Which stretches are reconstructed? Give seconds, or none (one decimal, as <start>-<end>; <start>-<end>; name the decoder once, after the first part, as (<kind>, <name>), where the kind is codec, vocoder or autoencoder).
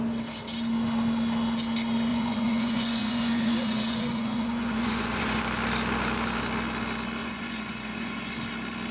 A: 2.1-5.4 (vocoder, Vocos); 7.2-8.3